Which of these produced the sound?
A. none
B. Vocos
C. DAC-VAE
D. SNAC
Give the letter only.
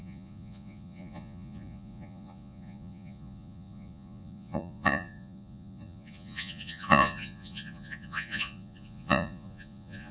B